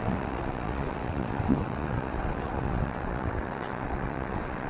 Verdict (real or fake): fake